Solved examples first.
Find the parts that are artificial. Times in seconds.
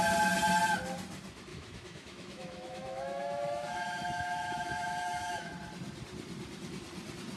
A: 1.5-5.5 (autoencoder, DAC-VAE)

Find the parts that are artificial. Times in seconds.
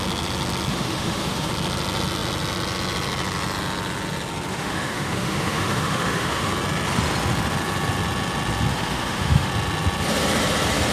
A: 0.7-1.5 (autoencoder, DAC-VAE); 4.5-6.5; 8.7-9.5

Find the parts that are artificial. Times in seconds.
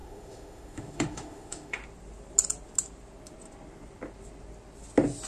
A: 0.0-1.8 (autoencoder, DAC-VAE)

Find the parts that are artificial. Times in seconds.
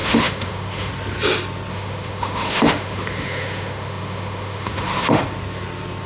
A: 0.0-0.9 (autoencoder, DAC-VAE); 1.7-5.2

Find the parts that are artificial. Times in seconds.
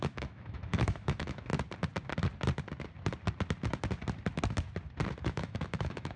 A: 0.0-1.5 (autoencoder, DAC-VAE); 5.2-6.2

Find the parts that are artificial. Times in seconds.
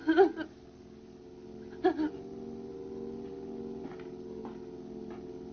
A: none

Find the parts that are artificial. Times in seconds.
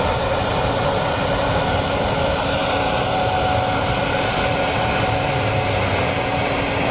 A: none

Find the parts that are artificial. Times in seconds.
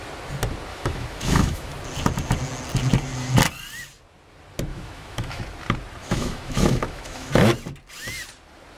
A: 0.7-1.7 (autoencoder, DAC-VAE); 4.7-5.4; 6.0-7.5